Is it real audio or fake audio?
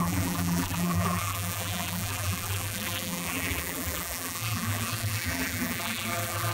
fake